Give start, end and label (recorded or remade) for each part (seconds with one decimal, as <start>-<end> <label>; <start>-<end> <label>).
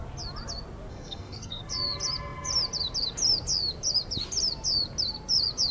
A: 0.0-0.9 recorded; 0.9-1.6 remade; 1.6-5.7 recorded